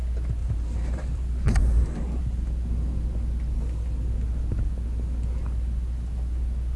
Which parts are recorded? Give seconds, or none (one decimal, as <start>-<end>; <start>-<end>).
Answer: 0.0-0.4; 2.2-6.8